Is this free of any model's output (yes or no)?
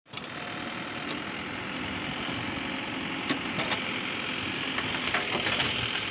yes